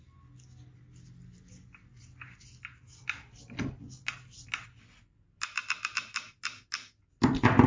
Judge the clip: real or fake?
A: real